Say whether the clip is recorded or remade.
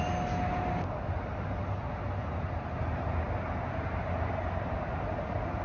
recorded